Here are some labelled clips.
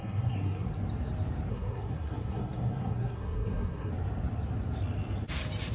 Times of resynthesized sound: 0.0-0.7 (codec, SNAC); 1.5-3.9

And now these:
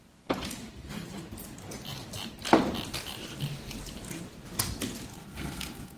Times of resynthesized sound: 5.1-6.0 (codec, SNAC)

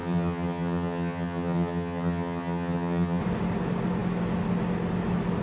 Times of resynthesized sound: 0.0-3.2 (vocoder, HiFi-GAN)

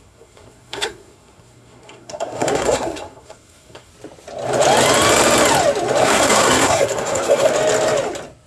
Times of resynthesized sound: 0.0-3.9 (codec, SNAC); 6.0-7.5

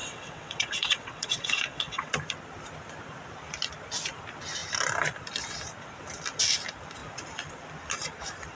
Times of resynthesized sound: 0.0-2.1 (vocoder, WaveNeXt)

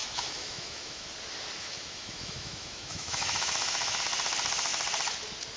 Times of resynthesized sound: 0.0-1.1 (autoencoder, DAC-VAE); 1.6-4.0

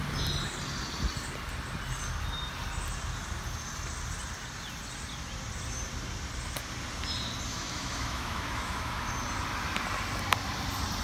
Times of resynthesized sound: 7.5-9.1 (autoencoder, DAC-VAE)